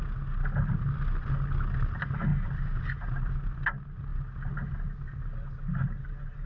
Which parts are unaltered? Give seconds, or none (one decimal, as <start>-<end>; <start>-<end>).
0.0-2.3; 3.3-6.5